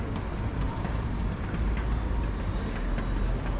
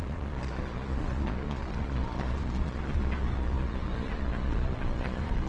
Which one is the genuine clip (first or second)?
first